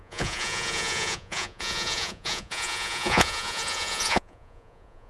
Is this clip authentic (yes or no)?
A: no